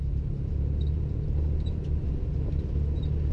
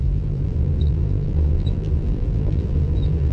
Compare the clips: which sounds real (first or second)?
first